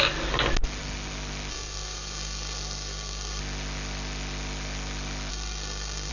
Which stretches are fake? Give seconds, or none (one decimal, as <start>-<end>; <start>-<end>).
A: 1.5-3.4; 5.3-6.1